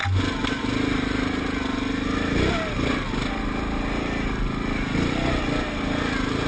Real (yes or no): yes